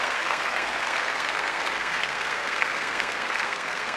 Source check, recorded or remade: remade